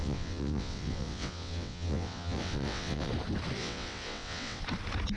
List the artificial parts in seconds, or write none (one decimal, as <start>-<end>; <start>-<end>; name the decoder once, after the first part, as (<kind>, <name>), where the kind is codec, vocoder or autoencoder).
0.0-3.1 (vocoder, WaveNeXt); 3.6-4.6